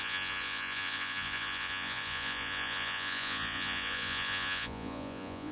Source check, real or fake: fake